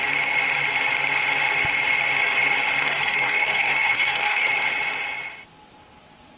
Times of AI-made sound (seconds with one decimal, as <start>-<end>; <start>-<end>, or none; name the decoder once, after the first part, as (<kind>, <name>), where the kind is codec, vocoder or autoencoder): 2.8-4.5 (codec, DAC)